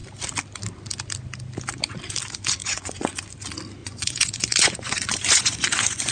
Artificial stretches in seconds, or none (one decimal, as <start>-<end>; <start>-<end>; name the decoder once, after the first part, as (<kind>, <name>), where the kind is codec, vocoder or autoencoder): 2.6-3.2 (vocoder, Vocos); 3.8-6.1